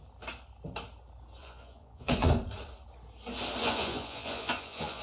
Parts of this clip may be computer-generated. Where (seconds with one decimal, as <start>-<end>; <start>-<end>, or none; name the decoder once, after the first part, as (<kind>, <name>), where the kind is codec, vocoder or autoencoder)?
1.4-2.3 (vocoder, Vocos); 3.6-5.0